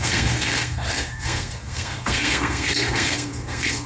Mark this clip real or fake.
fake